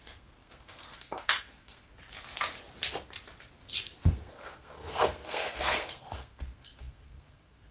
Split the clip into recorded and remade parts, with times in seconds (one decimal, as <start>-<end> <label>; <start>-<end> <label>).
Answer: 0.0-1.9 remade; 1.9-4.0 recorded; 4.0-7.7 remade